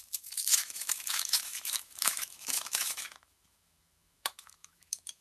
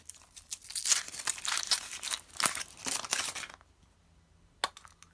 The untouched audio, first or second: second